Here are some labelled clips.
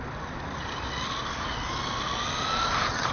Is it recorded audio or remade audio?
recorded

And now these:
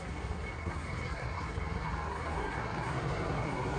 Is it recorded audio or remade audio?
remade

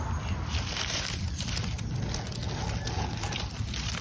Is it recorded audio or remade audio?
recorded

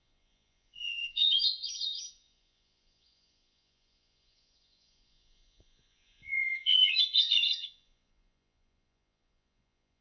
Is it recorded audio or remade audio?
remade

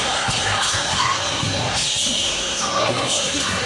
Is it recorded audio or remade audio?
remade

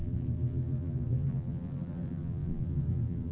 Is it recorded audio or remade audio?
remade